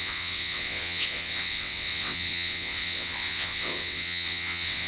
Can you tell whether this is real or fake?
fake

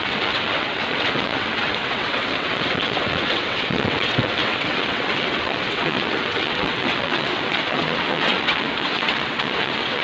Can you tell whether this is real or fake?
fake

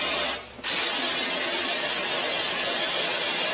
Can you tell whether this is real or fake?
real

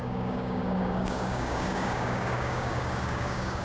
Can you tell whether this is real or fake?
fake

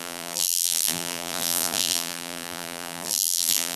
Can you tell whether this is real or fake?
fake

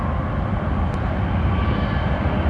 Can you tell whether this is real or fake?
real